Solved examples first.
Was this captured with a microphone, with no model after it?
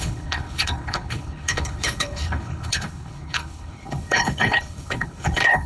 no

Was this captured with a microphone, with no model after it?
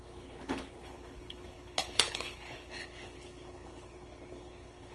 no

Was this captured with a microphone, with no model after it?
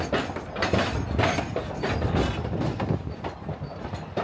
yes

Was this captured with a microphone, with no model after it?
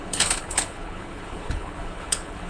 no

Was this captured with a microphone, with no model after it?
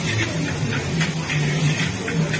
yes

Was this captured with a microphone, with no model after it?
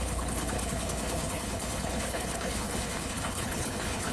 no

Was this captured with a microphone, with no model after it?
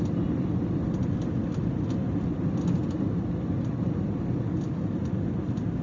yes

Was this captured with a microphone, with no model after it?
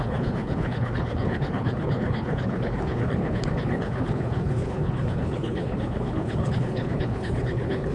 no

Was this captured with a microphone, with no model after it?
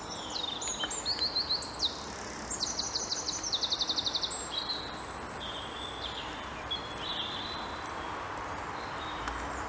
yes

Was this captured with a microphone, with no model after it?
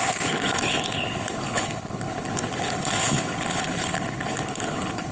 no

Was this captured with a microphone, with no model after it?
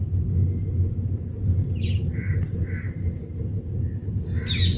yes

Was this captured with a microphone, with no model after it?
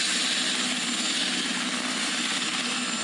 yes